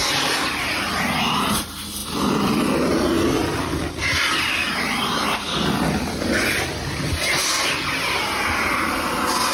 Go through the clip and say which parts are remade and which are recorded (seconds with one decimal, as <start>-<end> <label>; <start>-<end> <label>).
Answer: 0.0-9.5 recorded